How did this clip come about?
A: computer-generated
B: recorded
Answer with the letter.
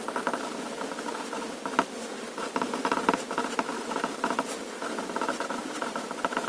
B